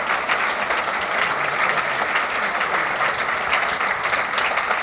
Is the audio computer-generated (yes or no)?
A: no